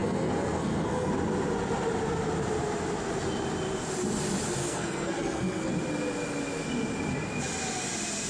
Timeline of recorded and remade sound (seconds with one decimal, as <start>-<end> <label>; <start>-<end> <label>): 0.0-1.1 remade; 1.1-4.6 recorded; 4.6-5.7 remade; 5.7-8.3 recorded

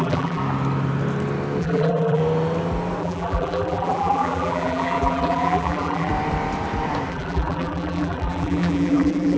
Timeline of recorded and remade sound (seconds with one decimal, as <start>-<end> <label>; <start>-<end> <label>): 0.0-0.4 remade; 0.4-1.6 recorded; 1.6-2.2 remade; 2.2-3.0 recorded; 3.0-6.1 remade; 6.1-7.1 recorded; 7.1-9.4 remade

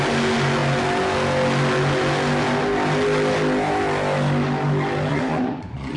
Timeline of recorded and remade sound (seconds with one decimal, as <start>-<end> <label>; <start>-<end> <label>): 0.0-5.1 recorded; 5.1-6.0 remade